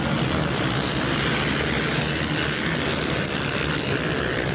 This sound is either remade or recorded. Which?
recorded